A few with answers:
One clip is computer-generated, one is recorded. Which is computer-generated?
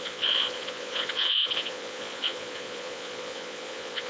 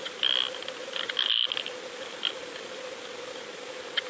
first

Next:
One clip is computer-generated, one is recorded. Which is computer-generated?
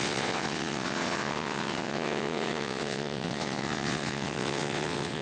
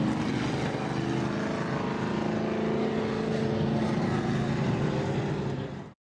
first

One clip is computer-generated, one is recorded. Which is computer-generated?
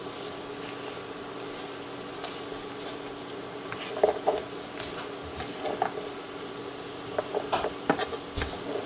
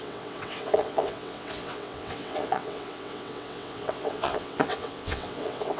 second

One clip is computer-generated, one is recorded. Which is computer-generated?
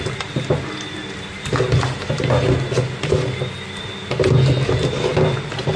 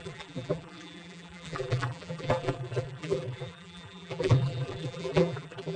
second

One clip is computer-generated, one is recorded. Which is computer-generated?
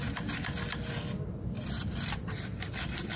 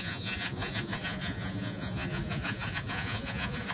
second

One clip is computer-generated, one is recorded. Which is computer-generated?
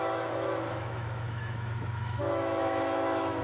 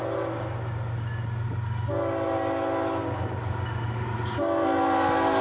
first